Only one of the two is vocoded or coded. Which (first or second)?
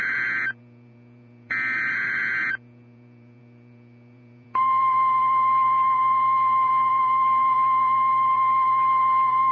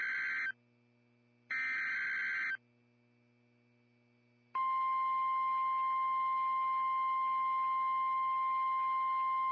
first